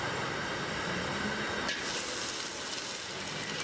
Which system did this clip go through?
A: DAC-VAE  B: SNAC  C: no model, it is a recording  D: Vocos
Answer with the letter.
C